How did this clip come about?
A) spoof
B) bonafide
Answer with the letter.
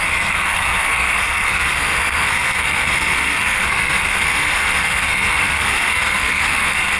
A